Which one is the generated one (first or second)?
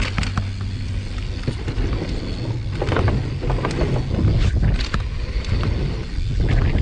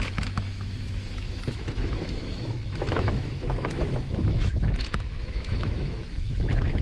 second